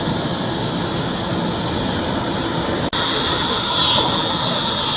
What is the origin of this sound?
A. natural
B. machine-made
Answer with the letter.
A